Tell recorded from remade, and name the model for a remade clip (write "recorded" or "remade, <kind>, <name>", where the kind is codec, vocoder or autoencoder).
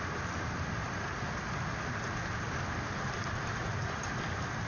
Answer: recorded